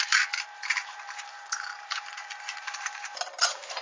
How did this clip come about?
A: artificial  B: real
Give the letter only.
A